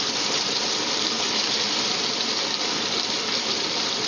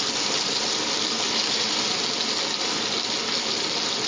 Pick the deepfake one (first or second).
first